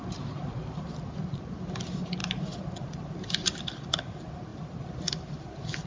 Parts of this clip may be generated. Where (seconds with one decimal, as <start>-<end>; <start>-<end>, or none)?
none